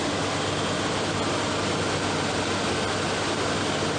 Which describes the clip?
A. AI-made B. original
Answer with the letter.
B